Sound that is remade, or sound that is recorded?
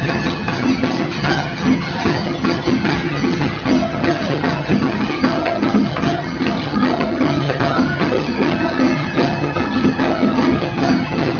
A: remade